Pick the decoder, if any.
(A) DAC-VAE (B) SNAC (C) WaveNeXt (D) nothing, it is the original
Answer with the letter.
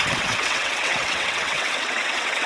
C